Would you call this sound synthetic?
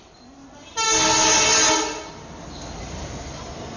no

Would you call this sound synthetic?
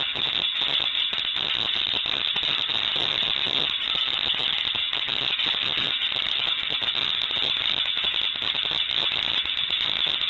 yes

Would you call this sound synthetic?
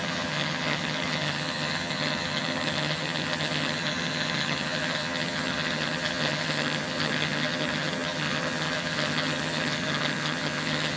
yes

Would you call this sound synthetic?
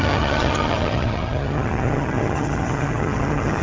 yes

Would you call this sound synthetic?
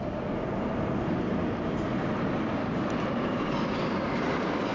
no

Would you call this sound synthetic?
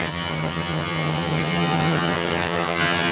yes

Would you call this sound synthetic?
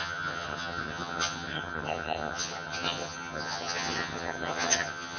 yes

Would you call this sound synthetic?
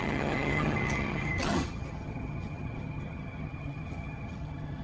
yes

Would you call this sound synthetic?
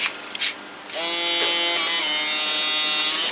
no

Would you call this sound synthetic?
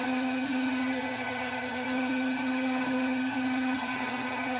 yes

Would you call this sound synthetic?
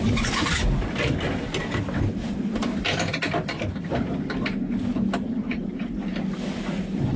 no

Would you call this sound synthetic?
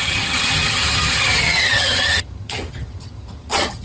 yes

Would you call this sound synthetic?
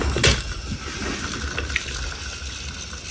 no